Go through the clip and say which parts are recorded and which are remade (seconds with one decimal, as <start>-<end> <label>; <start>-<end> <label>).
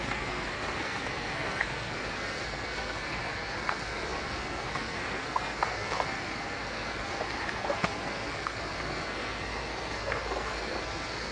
0.0-11.3 remade